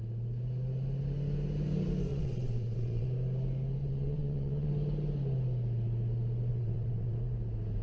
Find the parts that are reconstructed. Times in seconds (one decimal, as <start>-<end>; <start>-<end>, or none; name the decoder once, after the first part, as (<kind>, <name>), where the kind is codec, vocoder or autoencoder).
2.1-3.1 (vocoder, WaveNeXt); 3.8-4.7; 6.5-7.2